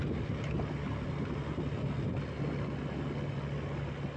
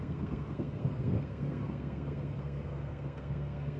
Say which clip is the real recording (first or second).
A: first